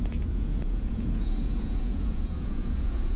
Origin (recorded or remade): remade